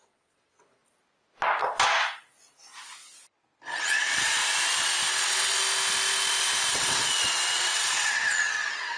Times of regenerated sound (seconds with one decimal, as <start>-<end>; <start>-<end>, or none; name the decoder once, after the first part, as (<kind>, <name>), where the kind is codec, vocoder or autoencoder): 0.0-0.8 (vocoder, WaveNeXt); 3.8-4.4; 5.1-5.6; 6.7-9.0